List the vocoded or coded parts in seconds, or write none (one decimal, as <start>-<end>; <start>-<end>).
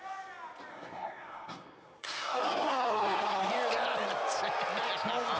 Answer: 0.7-3.5